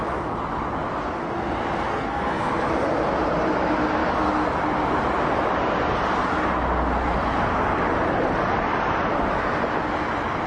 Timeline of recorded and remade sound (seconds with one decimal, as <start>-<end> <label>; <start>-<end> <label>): 0.0-1.9 recorded; 1.9-2.5 remade; 2.5-10.5 recorded